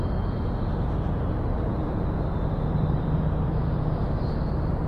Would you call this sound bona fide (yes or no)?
no